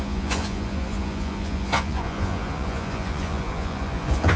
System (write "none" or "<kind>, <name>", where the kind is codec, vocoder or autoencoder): vocoder, Vocos